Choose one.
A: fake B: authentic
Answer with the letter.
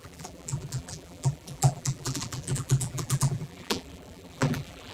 A